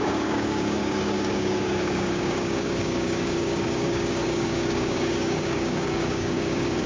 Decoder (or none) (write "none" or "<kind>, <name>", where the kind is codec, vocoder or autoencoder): codec, DAC